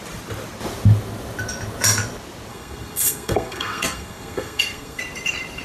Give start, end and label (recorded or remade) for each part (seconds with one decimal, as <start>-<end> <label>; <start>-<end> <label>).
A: 0.0-2.5 recorded; 2.5-5.0 remade; 5.0-5.6 recorded